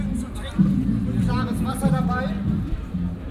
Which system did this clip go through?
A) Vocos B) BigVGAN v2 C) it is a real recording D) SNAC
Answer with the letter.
C